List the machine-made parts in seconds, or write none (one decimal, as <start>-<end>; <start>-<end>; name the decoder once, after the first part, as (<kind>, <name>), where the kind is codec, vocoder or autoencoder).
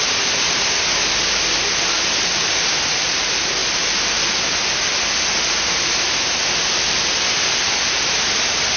none